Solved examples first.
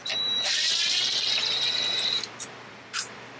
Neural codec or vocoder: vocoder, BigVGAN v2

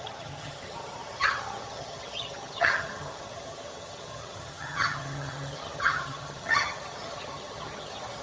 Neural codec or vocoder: vocoder, HiFi-GAN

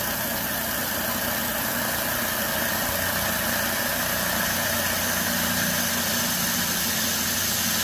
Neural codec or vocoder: none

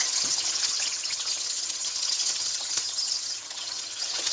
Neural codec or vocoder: vocoder, HiFi-GAN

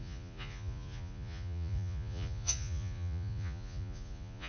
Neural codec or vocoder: vocoder, Vocos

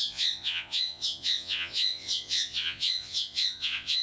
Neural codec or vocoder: vocoder, Vocos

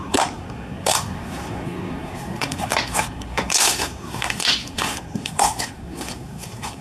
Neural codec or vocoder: codec, SNAC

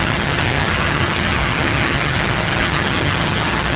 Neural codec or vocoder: vocoder, HiFi-GAN